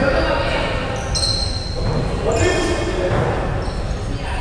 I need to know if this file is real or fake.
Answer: real